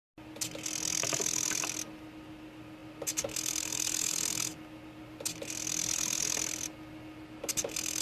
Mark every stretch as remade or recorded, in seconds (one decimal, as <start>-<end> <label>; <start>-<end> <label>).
0.0-8.0 recorded